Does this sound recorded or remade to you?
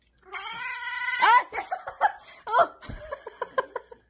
recorded